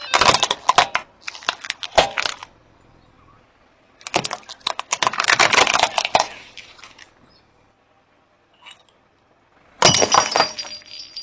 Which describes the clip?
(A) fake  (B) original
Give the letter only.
B